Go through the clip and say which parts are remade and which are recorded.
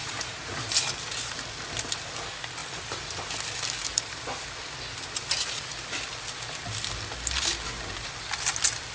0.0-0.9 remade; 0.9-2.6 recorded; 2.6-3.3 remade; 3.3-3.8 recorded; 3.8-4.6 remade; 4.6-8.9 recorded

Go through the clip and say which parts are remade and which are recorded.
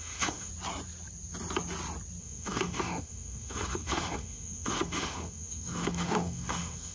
0.0-0.5 remade; 0.5-2.2 recorded; 2.2-6.9 remade